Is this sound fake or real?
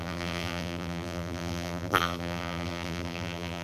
fake